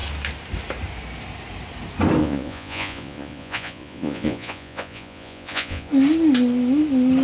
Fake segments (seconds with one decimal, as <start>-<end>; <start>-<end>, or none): 2.2-5.9